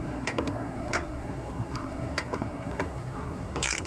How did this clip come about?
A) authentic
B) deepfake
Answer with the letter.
B